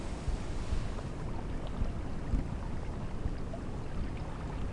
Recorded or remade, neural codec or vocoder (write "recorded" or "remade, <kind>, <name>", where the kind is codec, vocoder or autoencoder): recorded